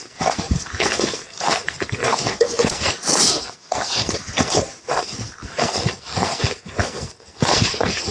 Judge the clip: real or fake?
fake